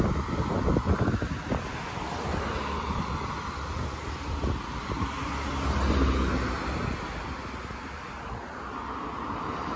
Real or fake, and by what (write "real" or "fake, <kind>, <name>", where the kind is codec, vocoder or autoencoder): real